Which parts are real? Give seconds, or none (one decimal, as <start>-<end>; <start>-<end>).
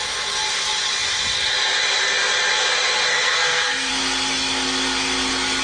0.0-3.1; 3.9-5.6